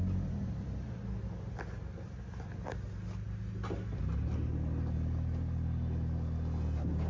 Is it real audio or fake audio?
real